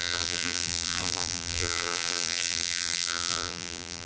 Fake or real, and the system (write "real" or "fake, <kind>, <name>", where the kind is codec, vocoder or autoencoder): fake, vocoder, BigVGAN v2